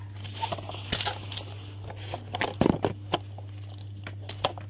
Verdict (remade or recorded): recorded